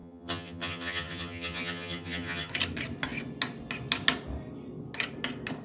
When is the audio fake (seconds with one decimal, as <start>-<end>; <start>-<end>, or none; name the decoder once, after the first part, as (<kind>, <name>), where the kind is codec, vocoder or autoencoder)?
0.0-2.5 (vocoder, HiFi-GAN)

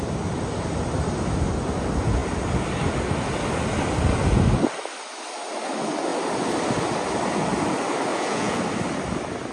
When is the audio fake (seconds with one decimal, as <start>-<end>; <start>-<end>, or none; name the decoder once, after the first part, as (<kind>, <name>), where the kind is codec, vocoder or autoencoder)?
8.1-8.6 (vocoder, Vocos)

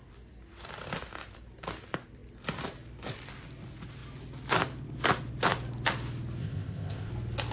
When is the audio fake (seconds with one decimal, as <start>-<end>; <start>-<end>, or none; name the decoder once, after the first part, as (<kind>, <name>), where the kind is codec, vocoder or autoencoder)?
6.4-7.1 (codec, ZipCodec)

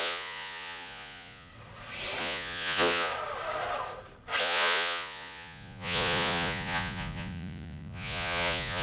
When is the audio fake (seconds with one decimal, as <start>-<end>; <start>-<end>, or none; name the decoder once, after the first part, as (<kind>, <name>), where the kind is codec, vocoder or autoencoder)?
0.0-1.5 (vocoder, Vocos); 2.2-3.1; 4.4-8.8

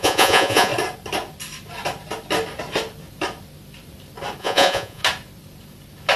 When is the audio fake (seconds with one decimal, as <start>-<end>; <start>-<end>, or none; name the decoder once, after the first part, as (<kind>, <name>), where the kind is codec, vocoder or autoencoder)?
0.0-0.7 (vocoder, Vocos); 4.4-5.0

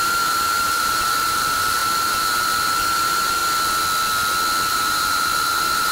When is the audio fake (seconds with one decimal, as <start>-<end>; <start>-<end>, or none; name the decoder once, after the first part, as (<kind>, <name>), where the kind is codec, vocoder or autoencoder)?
0.0-3.4 (vocoder, BigVGAN v2); 4.7-5.9

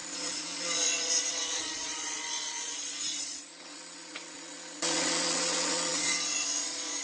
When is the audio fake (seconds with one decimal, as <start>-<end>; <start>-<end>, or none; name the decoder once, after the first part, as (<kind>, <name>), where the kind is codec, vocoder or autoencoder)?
0.0-7.0 (vocoder, Vocos)